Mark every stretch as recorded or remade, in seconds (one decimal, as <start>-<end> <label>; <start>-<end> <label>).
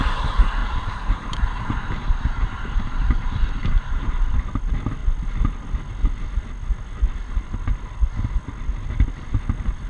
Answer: 0.0-0.6 recorded; 0.6-4.1 remade; 4.1-9.9 recorded